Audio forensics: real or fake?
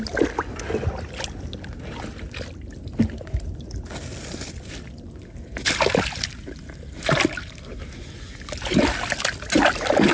real